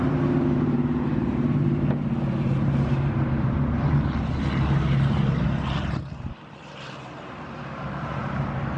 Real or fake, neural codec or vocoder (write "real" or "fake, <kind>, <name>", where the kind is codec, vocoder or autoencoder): fake, vocoder, BigVGAN v2